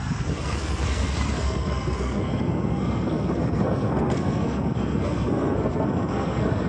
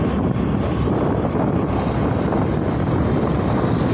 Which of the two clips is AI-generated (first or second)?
first